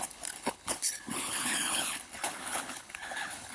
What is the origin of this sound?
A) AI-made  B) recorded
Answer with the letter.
A